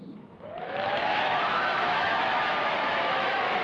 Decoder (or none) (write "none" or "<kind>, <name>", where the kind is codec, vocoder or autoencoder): autoencoder, DAC-VAE